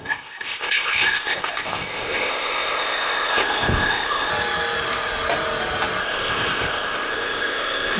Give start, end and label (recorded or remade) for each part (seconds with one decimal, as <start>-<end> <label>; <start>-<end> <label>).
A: 0.0-4.3 remade; 4.3-6.0 recorded; 6.0-8.0 remade